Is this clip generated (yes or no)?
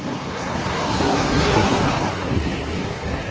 yes